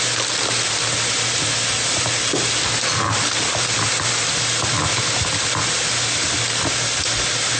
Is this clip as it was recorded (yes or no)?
yes